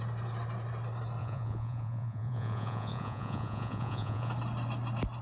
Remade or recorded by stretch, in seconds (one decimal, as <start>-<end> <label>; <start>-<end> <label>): 0.0-1.2 recorded; 1.2-4.3 remade; 4.3-5.2 recorded